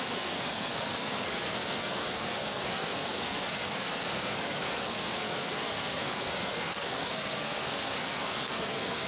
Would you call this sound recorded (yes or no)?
no